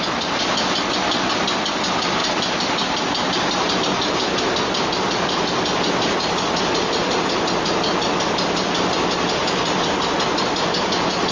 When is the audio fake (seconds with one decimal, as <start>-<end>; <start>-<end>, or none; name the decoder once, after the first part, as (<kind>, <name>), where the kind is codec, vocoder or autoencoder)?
none